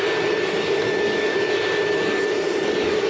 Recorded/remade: recorded